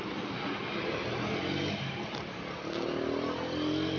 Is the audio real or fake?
real